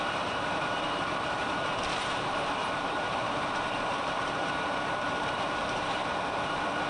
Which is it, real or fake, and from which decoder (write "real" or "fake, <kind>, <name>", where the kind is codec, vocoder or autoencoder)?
fake, vocoder, BigVGAN v2